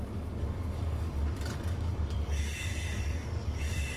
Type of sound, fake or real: fake